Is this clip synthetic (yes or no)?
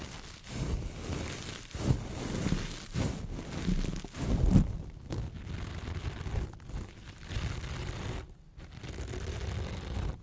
no